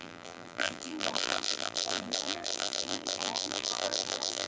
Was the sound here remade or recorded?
remade